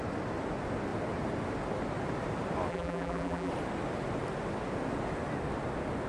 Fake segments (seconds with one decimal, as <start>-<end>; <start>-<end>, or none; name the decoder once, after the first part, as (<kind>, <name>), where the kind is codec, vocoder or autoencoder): 2.7-3.5 (vocoder, BigVGAN v2)